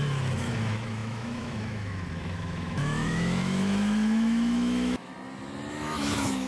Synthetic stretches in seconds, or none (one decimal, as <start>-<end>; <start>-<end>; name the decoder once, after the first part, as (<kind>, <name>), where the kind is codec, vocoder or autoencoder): 0.0-5.1 (autoencoder, DAC-VAE); 5.7-6.5